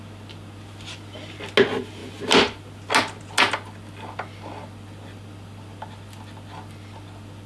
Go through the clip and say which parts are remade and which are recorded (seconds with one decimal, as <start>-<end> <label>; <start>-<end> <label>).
0.0-7.5 recorded